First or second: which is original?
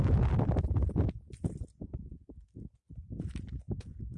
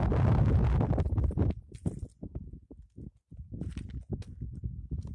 second